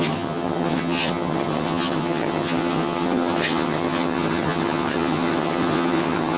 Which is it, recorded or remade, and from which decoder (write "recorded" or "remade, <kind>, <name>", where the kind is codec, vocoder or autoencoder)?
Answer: remade, vocoder, HiFi-GAN